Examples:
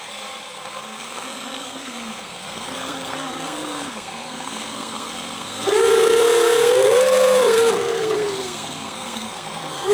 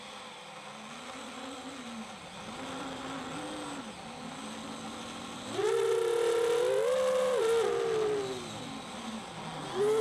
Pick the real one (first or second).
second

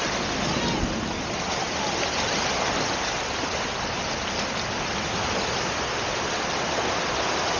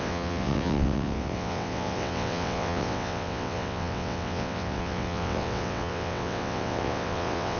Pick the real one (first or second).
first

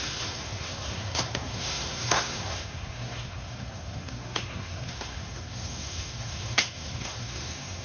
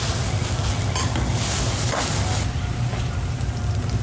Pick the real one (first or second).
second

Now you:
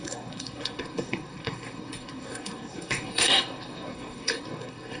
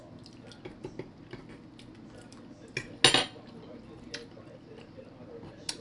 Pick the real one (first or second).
second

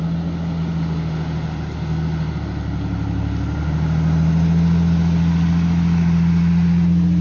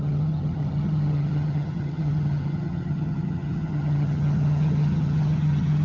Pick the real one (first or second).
first